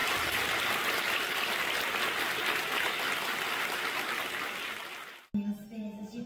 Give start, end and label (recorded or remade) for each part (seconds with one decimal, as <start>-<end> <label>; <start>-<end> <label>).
0.0-6.3 recorded